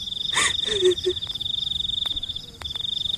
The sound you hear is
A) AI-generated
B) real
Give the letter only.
B